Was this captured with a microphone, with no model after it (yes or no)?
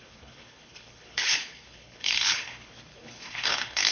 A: no